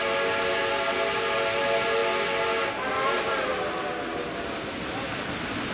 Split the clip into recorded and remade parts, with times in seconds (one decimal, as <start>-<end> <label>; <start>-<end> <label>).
0.0-5.7 recorded